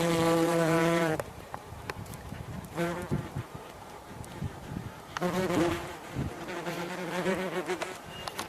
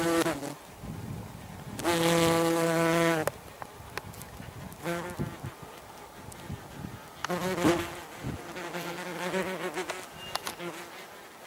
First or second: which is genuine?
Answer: second